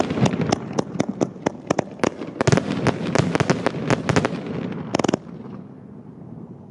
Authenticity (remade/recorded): recorded